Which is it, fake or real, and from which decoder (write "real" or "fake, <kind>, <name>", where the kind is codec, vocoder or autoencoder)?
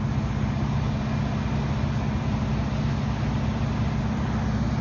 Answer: real